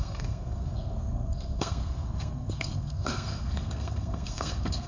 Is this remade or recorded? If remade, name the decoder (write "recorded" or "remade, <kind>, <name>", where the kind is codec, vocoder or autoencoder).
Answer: remade, codec, SNAC